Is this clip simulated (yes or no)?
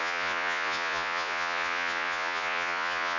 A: yes